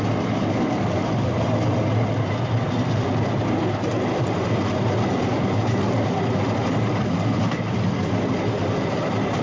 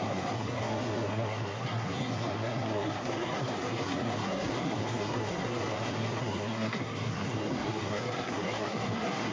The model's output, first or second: second